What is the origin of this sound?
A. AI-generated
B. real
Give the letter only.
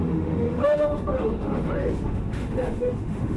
A